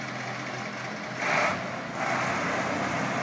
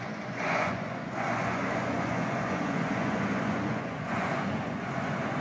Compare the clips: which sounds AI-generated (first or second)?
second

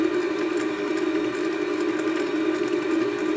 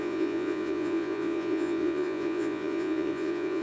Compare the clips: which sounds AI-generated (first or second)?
second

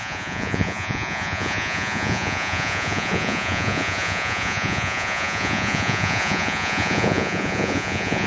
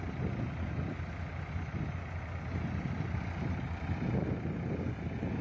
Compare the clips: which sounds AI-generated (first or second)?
first